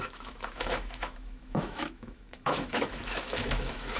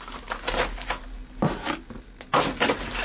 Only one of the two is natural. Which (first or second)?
second